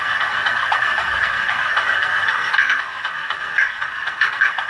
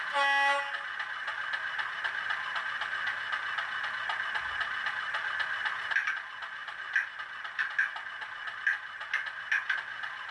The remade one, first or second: first